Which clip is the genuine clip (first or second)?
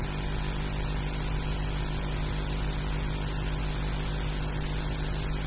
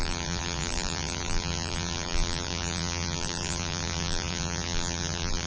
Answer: first